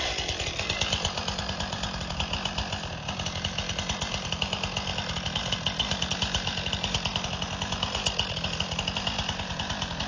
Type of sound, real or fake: fake